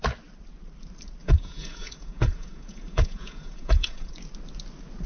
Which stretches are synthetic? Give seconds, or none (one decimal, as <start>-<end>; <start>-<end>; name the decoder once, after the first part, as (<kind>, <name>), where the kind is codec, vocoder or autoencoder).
1.2-4.1 (vocoder, Vocos)